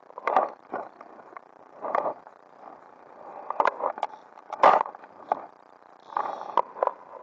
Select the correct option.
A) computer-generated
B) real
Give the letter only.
B